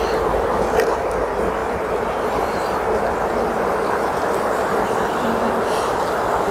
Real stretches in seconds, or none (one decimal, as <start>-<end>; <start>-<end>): 0.0-6.5

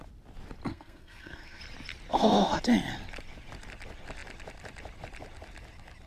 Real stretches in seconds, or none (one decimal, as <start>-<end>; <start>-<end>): 0.0-0.7; 1.6-2.1; 2.6-6.1